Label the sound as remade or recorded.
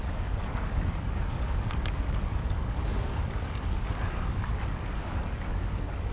remade